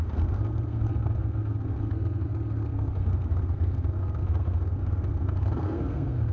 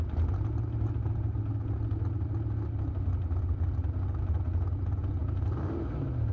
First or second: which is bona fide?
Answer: second